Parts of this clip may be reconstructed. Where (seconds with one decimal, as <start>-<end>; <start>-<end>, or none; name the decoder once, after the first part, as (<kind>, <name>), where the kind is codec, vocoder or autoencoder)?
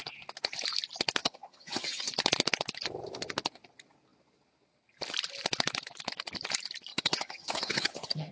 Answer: 1.2-2.1 (vocoder, HiFi-GAN); 6.9-8.3